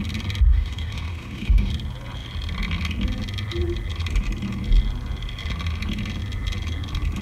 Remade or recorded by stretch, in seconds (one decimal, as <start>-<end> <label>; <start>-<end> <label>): 0.0-0.5 recorded; 0.5-1.7 remade; 1.7-7.2 recorded